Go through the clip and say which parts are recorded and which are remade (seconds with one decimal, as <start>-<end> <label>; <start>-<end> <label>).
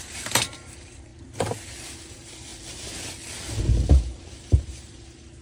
0.0-1.1 remade; 1.1-2.1 recorded; 2.1-2.5 remade; 2.5-3.6 recorded; 3.6-5.4 remade